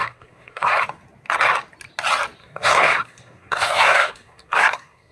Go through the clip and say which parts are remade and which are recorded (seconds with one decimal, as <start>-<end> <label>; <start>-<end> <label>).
0.0-0.8 remade; 0.8-2.4 recorded; 2.4-5.1 remade